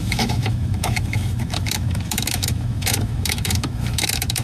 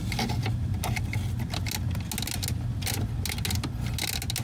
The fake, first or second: first